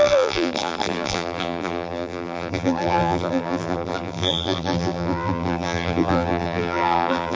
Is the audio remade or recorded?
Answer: remade